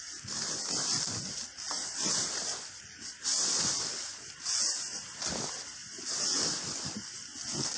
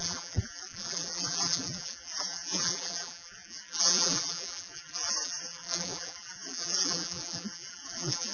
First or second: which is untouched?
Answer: first